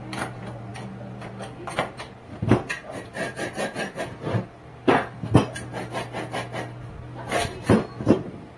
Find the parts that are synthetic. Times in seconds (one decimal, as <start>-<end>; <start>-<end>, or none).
0.0-2.4; 6.8-8.6